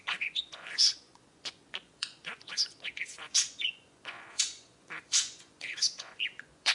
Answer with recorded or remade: remade